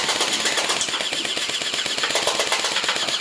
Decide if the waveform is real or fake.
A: real